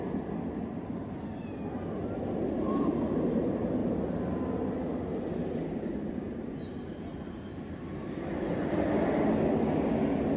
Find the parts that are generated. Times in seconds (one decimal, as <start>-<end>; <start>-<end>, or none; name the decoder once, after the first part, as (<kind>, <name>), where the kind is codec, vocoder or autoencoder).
none